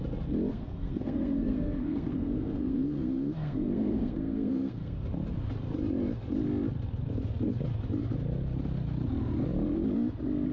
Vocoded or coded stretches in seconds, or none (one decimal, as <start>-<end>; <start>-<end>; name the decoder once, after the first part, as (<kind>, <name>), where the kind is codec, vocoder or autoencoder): 0.5-5.0 (codec, SNAC)